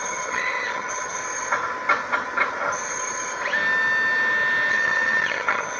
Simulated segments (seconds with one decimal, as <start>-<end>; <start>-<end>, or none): 0.0-1.2; 4.7-5.8